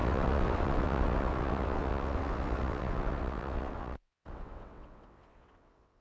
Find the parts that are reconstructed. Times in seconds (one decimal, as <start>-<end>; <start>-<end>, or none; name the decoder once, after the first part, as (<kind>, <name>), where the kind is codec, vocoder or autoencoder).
0.0-6.0 (vocoder, WaveNeXt)